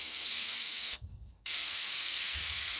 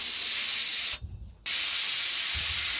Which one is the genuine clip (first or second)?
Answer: second